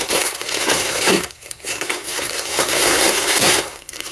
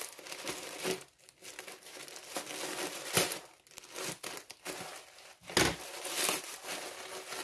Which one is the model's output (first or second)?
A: first